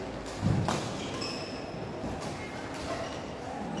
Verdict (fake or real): real